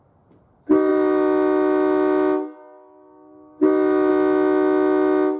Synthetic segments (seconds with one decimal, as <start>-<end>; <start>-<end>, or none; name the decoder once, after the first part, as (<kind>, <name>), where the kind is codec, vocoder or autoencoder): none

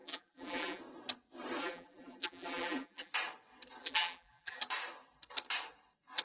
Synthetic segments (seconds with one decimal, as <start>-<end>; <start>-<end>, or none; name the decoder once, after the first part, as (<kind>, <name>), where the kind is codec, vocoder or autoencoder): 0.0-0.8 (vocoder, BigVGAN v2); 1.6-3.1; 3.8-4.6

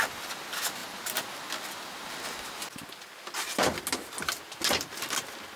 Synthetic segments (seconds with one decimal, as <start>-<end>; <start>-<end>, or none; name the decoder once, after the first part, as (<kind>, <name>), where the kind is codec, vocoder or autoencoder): none

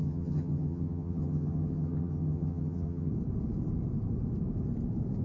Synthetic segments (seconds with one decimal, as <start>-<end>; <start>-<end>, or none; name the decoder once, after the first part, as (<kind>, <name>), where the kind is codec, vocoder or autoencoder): 0.0-3.1 (vocoder, HiFi-GAN)